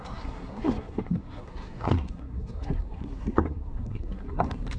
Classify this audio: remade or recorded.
remade